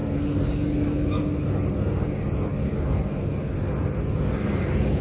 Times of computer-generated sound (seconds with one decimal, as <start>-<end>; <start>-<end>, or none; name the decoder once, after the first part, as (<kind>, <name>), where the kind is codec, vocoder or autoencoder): none